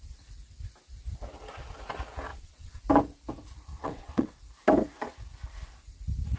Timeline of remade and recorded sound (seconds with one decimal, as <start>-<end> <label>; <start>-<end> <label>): 0.0-2.3 recorded; 2.3-2.8 remade; 2.8-3.7 recorded; 3.7-4.4 remade; 4.4-6.4 recorded